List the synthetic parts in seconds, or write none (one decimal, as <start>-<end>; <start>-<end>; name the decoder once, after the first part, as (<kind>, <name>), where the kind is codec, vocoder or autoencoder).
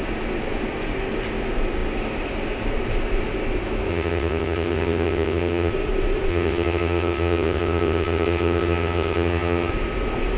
3.9-5.7 (vocoder, HiFi-GAN); 6.3-9.7